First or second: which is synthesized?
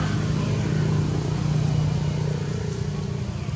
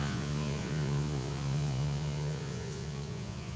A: second